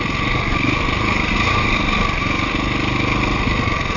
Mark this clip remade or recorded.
recorded